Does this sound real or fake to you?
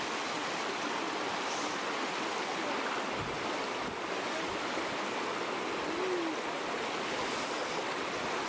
real